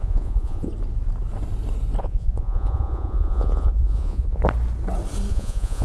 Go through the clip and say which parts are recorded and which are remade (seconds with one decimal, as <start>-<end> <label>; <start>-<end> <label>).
0.0-0.7 remade; 0.7-2.0 recorded; 2.0-4.4 remade; 4.4-5.3 recorded; 5.3-5.8 remade